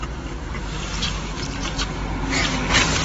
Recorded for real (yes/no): yes